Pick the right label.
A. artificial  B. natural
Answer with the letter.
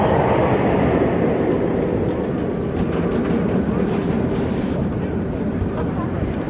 B